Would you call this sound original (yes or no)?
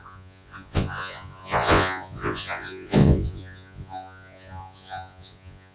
no